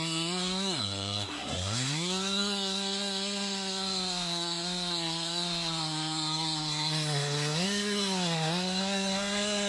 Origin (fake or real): fake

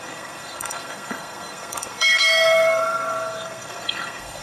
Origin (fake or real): fake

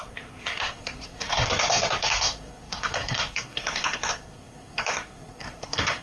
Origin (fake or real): fake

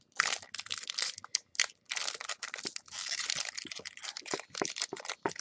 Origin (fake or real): real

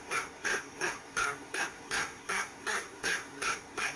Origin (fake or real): fake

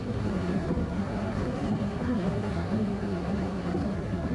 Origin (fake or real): fake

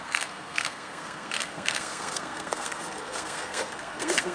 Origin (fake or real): fake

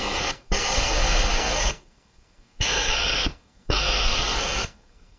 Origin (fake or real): fake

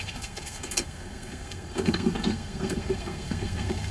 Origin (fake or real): fake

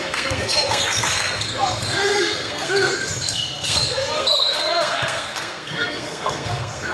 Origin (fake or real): fake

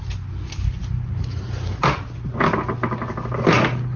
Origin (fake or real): real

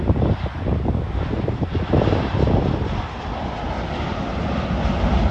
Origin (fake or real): real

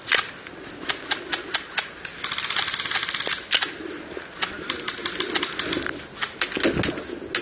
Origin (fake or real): real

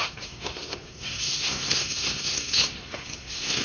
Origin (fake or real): fake